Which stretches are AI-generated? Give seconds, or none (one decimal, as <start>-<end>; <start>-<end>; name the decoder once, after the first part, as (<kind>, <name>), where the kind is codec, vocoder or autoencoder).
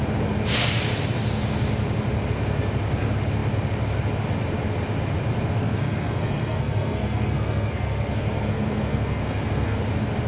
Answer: 5.6-9.8 (codec, SNAC)